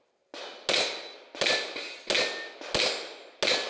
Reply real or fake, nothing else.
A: real